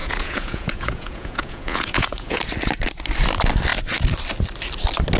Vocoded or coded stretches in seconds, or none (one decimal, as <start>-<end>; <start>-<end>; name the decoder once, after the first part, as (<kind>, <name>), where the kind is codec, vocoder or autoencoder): 0.0-2.4 (vocoder, Vocos)